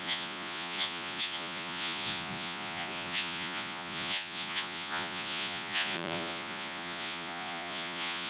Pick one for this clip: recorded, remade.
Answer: remade